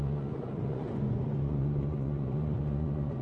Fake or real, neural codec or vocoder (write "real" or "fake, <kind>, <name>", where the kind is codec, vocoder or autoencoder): fake, vocoder, Vocos